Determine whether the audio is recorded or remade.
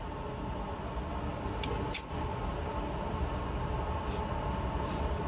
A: recorded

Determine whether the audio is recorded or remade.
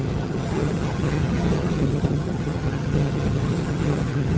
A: remade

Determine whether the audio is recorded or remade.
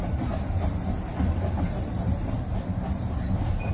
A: recorded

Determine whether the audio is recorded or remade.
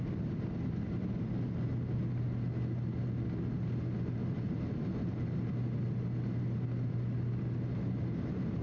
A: recorded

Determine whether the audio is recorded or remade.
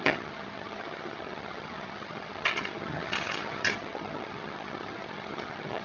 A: remade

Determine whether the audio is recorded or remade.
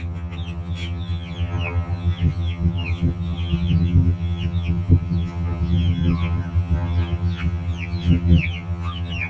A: remade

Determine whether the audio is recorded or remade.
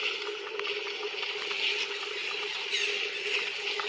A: recorded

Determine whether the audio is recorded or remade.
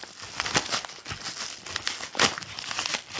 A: recorded